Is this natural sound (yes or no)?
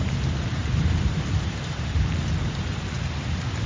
no